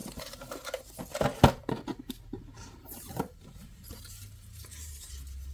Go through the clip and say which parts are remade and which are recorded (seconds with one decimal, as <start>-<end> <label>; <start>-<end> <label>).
0.0-1.0 remade; 1.0-1.9 recorded; 1.9-4.9 remade; 4.9-5.5 recorded